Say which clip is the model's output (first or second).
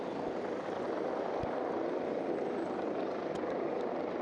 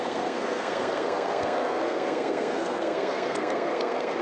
second